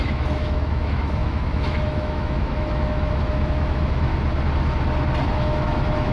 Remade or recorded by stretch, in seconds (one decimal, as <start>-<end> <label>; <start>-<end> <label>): 0.0-4.1 remade; 4.1-5.3 recorded; 5.3-6.1 remade